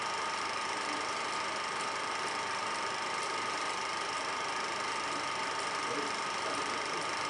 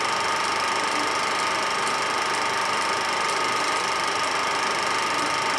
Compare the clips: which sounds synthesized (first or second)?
first